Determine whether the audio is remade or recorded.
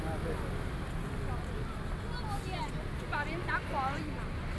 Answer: recorded